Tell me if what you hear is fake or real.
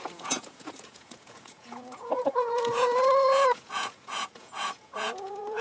fake